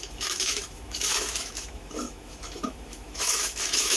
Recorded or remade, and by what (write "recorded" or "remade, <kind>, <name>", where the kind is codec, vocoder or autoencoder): remade, autoencoder, DAC-VAE